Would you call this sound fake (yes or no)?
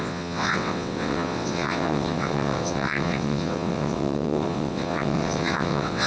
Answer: yes